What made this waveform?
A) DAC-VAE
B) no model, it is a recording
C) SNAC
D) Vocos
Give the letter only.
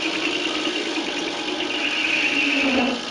B